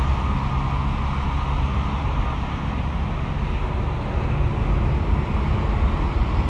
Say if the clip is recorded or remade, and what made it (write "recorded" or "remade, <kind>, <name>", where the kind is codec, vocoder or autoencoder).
recorded